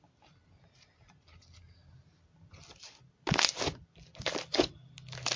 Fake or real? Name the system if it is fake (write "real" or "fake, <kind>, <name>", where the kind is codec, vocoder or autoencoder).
real